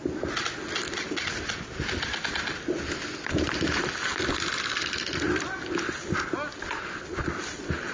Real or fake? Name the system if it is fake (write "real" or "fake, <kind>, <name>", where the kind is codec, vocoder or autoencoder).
real